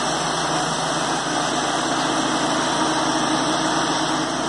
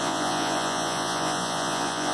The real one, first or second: first